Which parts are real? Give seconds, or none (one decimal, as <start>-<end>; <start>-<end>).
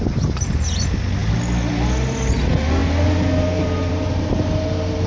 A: 0.0-5.1